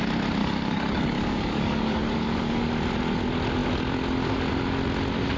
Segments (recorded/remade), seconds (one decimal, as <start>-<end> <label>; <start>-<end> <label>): 0.0-0.4 recorded; 0.4-2.6 remade; 2.6-5.4 recorded